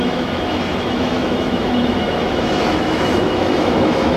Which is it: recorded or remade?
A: remade